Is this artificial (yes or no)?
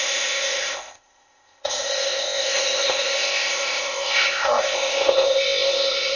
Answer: yes